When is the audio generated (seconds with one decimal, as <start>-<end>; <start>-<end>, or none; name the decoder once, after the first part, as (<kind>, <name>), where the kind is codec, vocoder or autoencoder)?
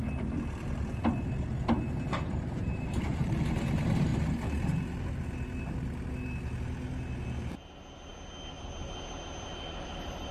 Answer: 2.1-3.4 (vocoder, BigVGAN v2)